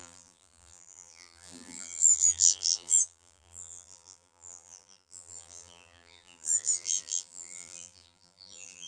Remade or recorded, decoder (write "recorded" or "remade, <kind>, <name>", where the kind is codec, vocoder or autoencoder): remade, vocoder, BigVGAN v2